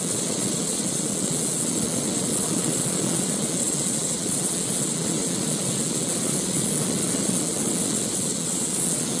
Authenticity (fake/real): fake